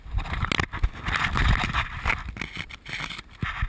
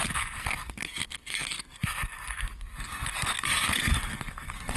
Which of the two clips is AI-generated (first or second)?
second